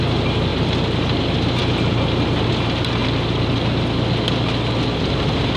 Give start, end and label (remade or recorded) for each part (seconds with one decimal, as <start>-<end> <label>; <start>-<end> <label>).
0.0-3.0 remade; 3.0-5.1 recorded; 5.1-5.6 remade